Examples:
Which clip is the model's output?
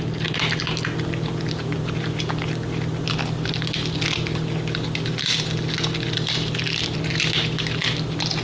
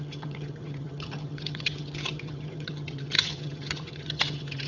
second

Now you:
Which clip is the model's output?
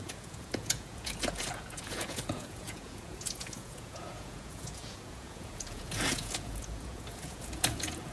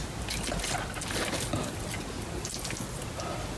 first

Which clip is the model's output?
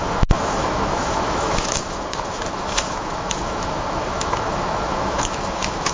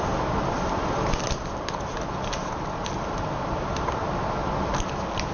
first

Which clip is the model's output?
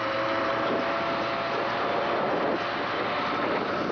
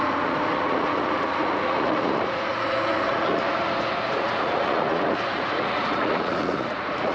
second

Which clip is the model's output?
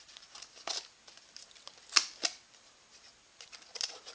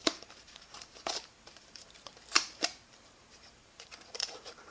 second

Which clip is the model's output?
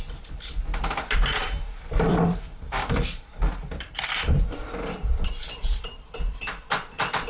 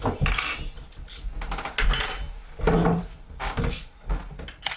first